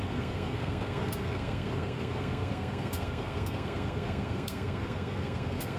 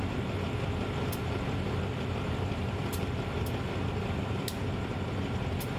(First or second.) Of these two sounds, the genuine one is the second